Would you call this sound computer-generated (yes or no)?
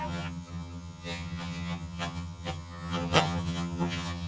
yes